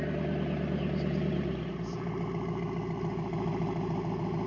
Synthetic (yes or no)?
no